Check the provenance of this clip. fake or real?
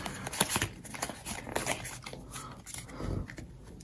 real